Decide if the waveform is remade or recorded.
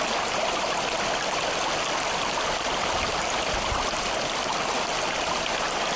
recorded